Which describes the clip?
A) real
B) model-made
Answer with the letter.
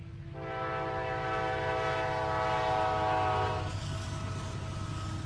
A